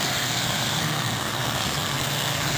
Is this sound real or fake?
fake